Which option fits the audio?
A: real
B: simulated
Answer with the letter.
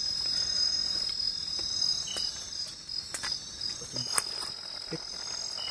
A